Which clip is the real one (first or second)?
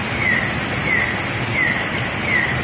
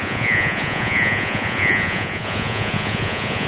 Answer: first